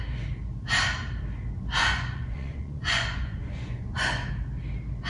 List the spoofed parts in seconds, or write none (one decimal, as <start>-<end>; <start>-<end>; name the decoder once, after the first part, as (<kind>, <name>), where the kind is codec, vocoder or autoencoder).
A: 1.8-4.3 (vocoder, Vocos)